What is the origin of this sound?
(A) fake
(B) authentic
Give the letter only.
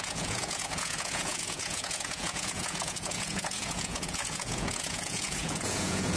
A